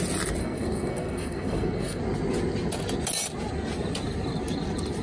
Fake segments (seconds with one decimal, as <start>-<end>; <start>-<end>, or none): 0.4-2.0